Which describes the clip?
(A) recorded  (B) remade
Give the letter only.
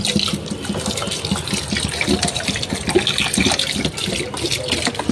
A